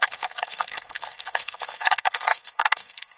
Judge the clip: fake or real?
fake